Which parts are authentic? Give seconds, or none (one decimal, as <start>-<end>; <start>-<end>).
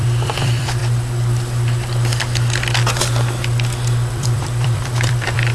0.8-4.1